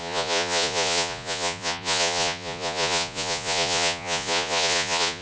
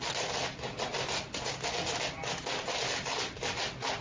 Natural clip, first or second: second